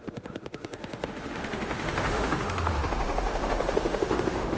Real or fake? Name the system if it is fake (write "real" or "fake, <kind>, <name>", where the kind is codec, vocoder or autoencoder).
fake, autoencoder, DAC-VAE